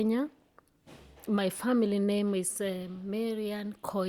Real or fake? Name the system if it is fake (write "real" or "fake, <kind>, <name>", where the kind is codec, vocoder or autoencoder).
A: real